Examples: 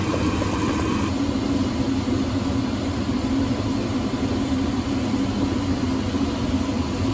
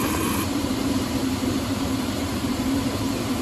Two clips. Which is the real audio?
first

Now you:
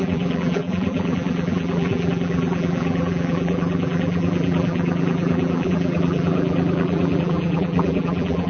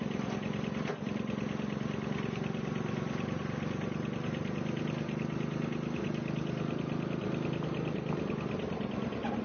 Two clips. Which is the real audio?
second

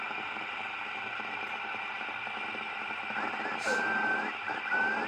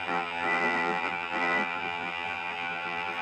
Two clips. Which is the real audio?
first